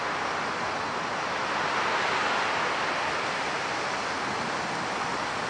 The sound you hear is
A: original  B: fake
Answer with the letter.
A